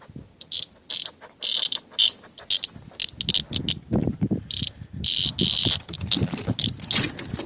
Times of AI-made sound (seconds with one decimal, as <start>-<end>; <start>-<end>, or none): 4.0-4.6; 5.6-6.7